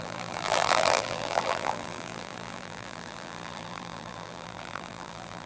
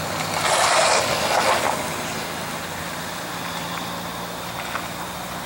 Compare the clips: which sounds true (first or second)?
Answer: second